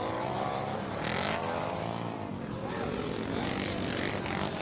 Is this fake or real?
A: real